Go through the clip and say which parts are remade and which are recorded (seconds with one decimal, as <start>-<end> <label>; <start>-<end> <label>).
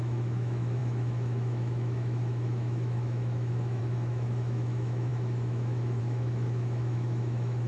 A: 0.0-7.7 remade